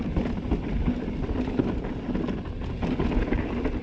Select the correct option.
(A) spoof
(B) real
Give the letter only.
B